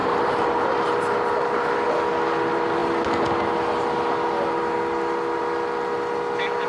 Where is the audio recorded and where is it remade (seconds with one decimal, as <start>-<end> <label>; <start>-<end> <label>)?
0.0-6.7 recorded